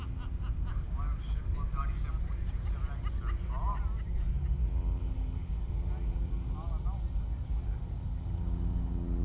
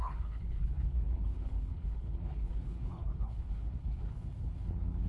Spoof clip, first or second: second